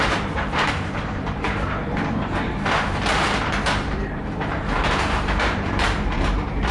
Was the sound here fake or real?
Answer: fake